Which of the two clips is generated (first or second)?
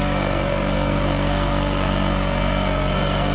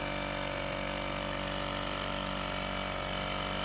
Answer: first